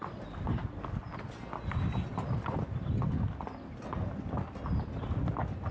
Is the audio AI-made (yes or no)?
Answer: no